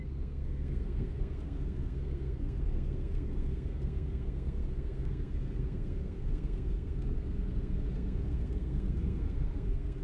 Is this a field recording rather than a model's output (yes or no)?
no